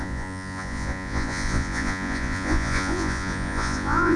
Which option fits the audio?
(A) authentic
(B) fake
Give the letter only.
B